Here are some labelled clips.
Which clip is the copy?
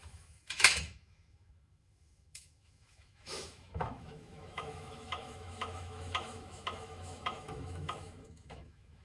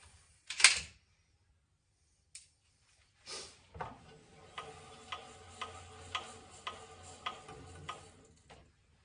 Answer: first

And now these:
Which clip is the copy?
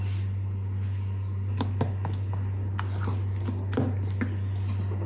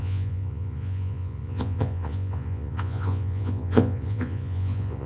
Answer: second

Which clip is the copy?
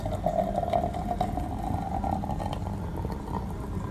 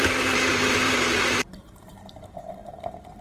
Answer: second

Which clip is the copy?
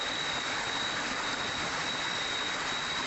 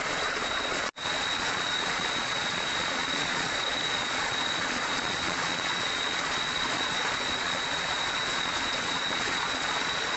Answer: second